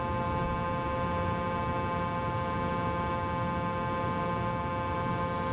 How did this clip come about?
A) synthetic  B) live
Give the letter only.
B